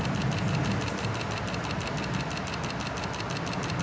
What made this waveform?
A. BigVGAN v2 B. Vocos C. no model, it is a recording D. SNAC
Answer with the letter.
C